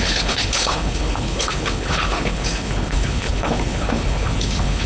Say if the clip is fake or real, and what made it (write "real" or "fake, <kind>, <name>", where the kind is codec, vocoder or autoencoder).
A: fake, codec, HILCodec